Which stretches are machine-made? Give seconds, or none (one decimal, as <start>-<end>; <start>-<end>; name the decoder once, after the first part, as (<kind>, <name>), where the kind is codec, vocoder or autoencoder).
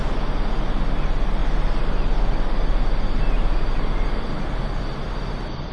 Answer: none